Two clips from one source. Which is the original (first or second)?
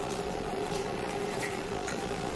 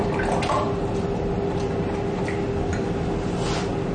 second